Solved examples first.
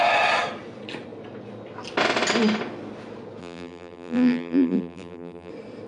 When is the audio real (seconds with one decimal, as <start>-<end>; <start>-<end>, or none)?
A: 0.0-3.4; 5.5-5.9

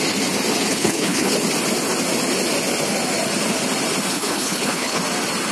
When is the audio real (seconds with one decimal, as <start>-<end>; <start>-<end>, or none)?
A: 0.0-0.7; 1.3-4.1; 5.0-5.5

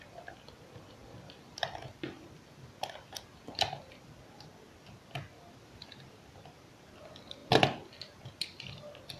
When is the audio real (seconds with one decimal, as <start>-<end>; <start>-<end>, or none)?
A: 0.0-9.2